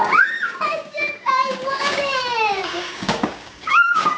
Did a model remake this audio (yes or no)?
yes